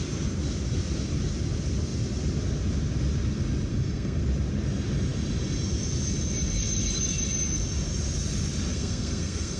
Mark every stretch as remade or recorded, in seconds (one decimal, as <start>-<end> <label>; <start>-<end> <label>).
0.0-3.7 recorded; 3.7-4.2 remade; 4.2-8.7 recorded; 8.7-9.6 remade